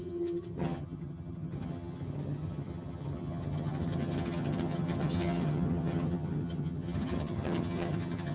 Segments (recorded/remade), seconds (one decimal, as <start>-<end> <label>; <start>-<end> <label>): 0.0-8.3 remade